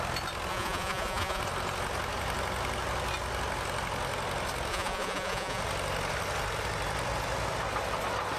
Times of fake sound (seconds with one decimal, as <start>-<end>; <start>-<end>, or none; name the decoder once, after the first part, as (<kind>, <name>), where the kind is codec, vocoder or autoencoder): 0.5-1.4 (vocoder, Vocos); 4.7-5.6